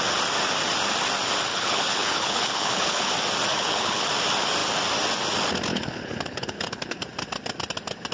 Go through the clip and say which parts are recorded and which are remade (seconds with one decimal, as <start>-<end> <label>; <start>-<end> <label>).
0.0-1.5 recorded; 1.5-3.1 remade; 3.1-3.5 recorded; 3.5-4.1 remade; 4.1-5.7 recorded; 5.7-7.0 remade; 7.0-8.1 recorded